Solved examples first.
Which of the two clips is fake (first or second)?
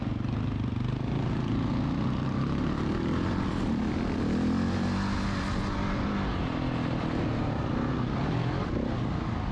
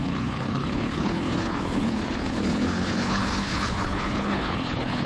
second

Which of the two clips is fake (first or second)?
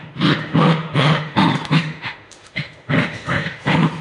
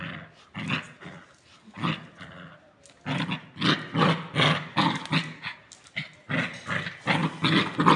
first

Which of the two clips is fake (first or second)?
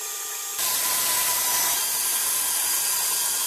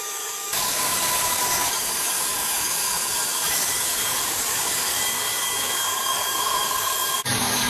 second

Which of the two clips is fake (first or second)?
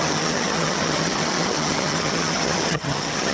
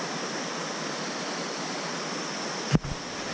first